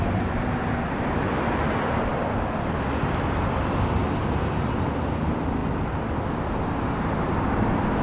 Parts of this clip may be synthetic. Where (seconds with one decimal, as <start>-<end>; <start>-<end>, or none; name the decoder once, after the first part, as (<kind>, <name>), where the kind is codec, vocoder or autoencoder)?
none